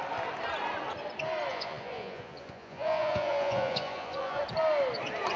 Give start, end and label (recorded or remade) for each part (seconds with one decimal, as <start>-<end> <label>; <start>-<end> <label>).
0.0-1.5 recorded; 1.5-4.4 remade; 4.4-5.4 recorded